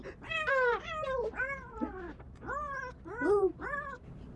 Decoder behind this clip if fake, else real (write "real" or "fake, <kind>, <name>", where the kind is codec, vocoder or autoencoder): real